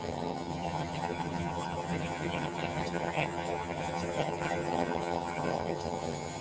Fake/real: fake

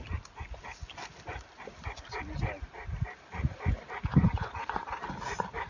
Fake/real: real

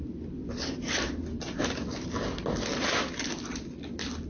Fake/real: real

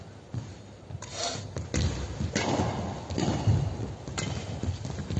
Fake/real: real